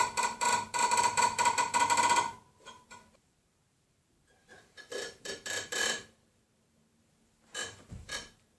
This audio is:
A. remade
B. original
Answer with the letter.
A